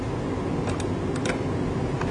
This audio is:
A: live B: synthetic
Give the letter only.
A